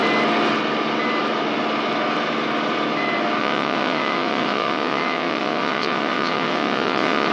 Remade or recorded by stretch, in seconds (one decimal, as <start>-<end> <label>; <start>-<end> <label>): 0.0-3.4 recorded; 3.4-7.3 remade